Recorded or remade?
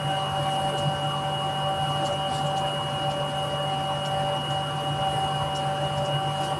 recorded